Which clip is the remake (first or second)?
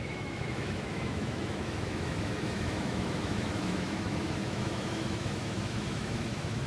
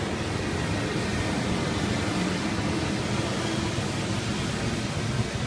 first